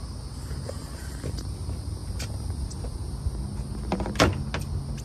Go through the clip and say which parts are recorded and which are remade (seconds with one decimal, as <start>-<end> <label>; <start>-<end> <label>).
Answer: 0.0-5.0 recorded